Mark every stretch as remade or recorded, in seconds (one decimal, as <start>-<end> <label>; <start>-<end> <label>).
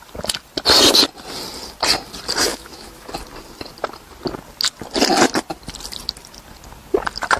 0.0-2.5 recorded; 2.5-3.1 remade; 3.1-7.4 recorded